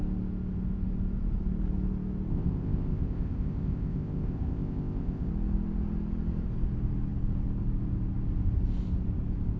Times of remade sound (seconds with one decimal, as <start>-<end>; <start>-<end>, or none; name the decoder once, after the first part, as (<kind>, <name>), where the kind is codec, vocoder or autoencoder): 2.3-5.3 (codec, ZipCodec)